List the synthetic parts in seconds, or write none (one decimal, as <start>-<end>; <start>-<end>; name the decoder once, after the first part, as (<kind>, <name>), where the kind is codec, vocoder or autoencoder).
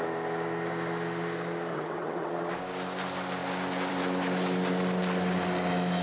1.7-2.3 (vocoder, WaveNeXt)